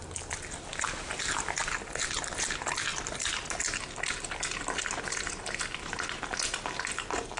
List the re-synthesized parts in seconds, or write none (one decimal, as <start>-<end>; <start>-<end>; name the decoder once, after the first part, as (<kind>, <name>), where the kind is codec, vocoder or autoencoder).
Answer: none